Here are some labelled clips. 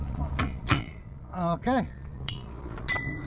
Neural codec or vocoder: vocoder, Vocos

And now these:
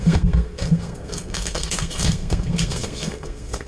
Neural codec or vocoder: codec, SNAC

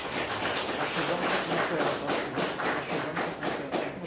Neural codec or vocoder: none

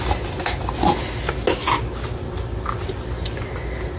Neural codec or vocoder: none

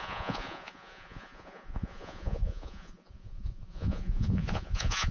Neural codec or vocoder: vocoder, Vocos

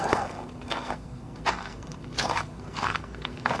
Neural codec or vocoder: codec, SNAC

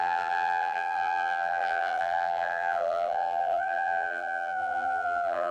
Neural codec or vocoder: vocoder, BigVGAN v2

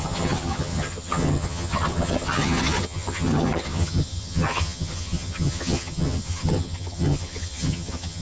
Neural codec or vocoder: vocoder, HiFi-GAN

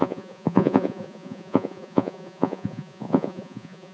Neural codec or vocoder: vocoder, Vocos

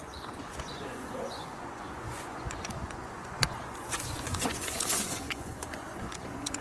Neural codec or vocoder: vocoder, Vocos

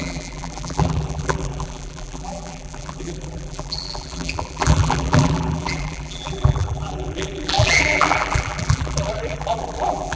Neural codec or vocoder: vocoder, BigVGAN v2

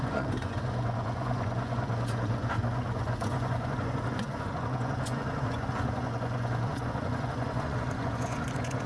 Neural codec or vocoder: vocoder, Vocos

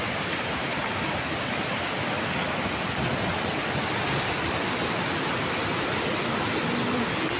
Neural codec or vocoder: none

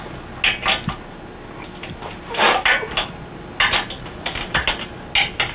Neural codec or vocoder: none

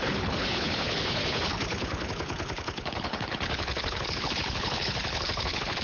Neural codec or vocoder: codec, HILCodec